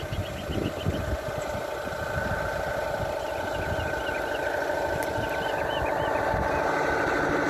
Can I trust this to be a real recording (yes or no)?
yes